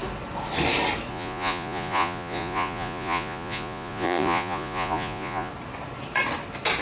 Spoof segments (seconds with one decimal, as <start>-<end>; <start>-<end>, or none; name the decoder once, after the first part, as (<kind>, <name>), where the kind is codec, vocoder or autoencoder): 1.1-5.5 (vocoder, Vocos)